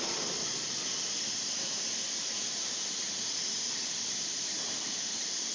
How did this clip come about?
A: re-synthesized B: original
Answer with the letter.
B